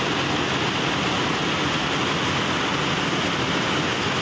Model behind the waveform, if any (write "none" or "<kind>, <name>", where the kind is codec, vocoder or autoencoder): none